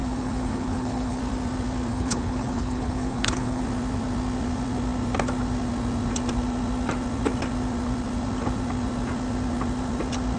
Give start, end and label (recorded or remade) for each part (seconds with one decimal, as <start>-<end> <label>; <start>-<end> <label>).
0.0-1.2 remade; 1.2-1.9 recorded; 1.9-3.6 remade; 3.6-10.4 recorded